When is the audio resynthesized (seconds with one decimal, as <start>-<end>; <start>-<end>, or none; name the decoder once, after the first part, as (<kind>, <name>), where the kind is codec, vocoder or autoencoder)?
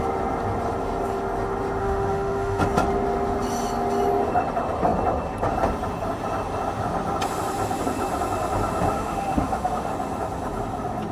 1.8-2.6 (autoencoder, DAC-VAE); 8.9-9.9